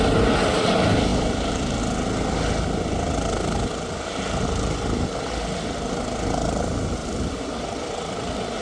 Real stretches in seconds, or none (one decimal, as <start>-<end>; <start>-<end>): 0.0-1.1; 1.8-7.0; 7.9-8.6